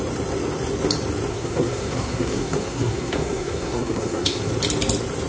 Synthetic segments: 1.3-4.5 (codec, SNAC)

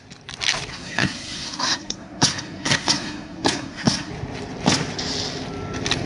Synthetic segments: 0.7-4.1 (codec, SNAC)

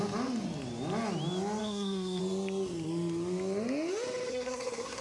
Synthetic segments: 1.6-2.2 (codec, SNAC); 4.3-5.0

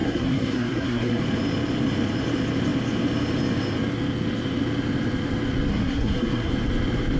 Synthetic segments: 0.0-1.2 (codec, SNAC); 5.7-6.5

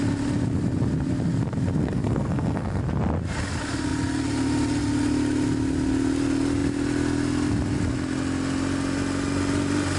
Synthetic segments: 1.8-2.8 (codec, SNAC)

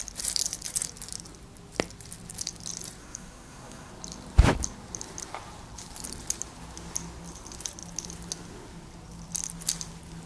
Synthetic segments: 3.0-3.9 (codec, SNAC)

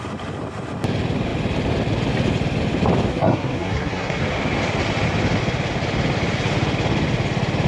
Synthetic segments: 3.1-4.2 (codec, SNAC)